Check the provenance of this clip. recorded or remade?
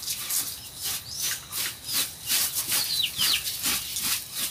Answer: recorded